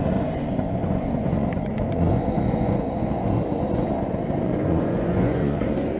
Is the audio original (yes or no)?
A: no